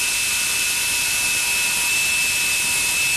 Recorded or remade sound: recorded